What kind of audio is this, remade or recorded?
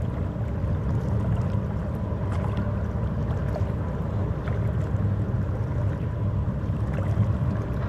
recorded